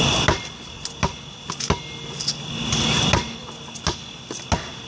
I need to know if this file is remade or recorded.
recorded